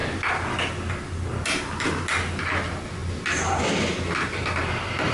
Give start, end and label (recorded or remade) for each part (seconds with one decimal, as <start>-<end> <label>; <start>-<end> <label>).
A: 0.0-5.1 recorded